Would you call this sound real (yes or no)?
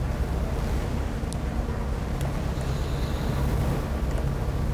yes